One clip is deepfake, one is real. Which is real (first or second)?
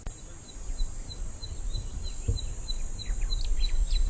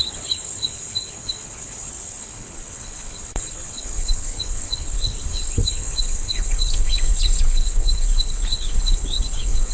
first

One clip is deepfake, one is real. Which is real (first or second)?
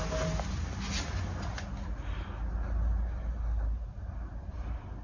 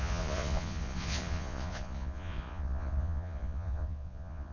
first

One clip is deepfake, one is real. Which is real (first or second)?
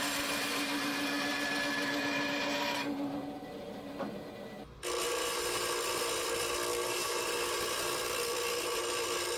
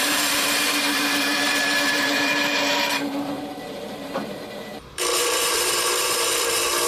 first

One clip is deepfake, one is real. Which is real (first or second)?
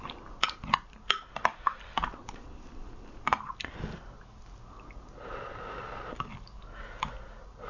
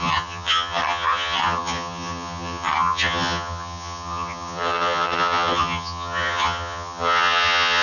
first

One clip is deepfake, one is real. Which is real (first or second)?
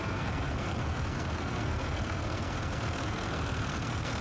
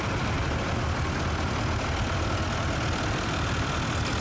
second